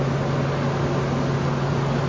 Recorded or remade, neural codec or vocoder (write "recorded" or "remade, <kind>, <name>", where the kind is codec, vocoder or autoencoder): recorded